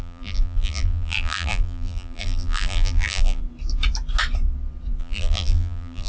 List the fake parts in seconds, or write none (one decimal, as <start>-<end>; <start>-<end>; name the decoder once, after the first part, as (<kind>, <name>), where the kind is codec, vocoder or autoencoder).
0.0-3.4 (vocoder, BigVGAN v2); 5.0-6.1